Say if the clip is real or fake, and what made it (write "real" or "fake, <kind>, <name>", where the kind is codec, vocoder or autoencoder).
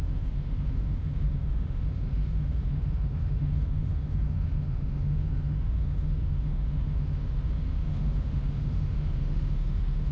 fake, autoencoder, DAC-VAE